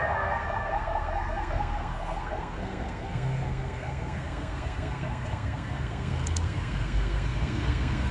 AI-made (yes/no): yes